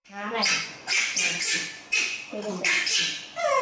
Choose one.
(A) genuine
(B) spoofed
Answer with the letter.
B